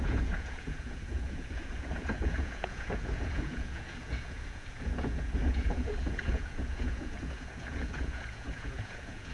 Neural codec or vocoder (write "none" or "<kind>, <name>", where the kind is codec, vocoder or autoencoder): vocoder, Vocos